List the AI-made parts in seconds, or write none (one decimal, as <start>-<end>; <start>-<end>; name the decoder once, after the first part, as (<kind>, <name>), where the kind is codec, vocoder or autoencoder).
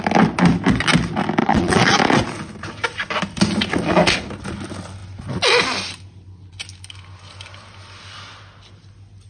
1.4-2.0 (vocoder, Vocos)